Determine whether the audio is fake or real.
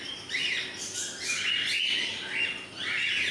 real